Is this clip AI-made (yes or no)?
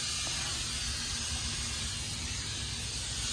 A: no